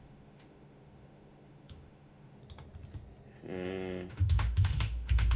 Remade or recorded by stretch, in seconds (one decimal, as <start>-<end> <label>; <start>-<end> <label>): 0.0-2.4 remade; 2.4-4.1 recorded; 4.1-5.4 remade